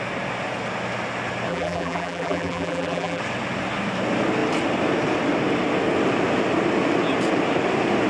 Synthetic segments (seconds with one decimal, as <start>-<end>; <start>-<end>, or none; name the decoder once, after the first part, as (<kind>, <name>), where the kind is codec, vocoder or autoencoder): 1.5-3.2 (vocoder, BigVGAN v2)